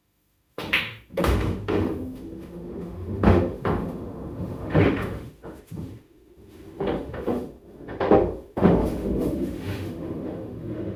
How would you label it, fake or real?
fake